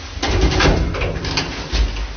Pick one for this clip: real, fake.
real